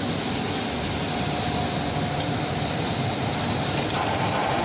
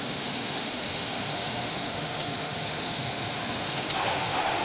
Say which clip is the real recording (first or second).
first